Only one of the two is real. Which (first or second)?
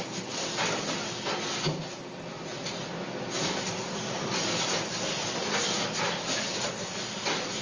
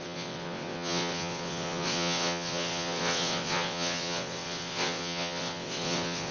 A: first